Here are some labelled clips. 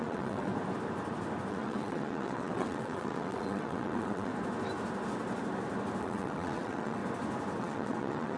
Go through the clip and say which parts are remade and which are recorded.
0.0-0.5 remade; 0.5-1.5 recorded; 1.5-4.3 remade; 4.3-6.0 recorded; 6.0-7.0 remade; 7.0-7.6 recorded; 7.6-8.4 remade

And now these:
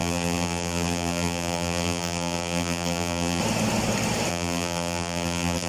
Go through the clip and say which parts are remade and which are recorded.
0.0-3.4 remade; 3.4-4.3 recorded; 4.3-5.7 remade

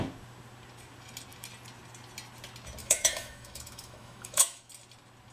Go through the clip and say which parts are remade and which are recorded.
0.0-2.8 recorded; 2.8-4.7 remade; 4.7-5.3 recorded

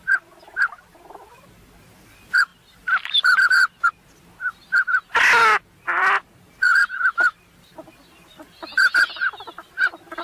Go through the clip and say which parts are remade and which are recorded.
0.0-10.2 recorded

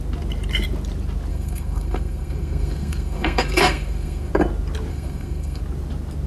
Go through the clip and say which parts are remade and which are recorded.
0.0-1.3 recorded; 1.3-4.3 remade; 4.3-4.9 recorded; 4.9-5.6 remade; 5.6-6.3 recorded

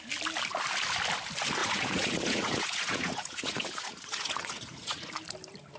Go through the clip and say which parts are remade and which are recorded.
0.0-1.6 recorded; 1.6-5.1 remade; 5.1-5.8 recorded

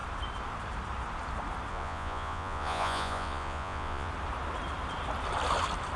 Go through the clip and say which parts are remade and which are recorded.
0.0-1.7 recorded; 1.7-4.1 remade; 4.1-6.0 recorded

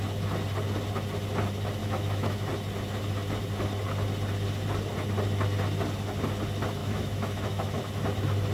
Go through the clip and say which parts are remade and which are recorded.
0.0-1.8 recorded; 1.8-2.5 remade; 2.5-6.8 recorded; 6.8-7.8 remade; 7.8-8.5 recorded